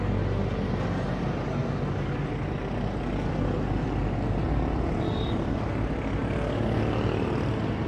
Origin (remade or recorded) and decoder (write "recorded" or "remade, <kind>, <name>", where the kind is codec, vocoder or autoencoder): recorded